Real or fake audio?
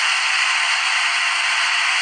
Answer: real